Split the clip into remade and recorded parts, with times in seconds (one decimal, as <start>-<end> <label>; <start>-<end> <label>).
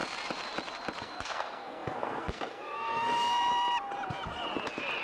0.0-1.0 recorded; 1.0-3.5 remade; 3.5-5.0 recorded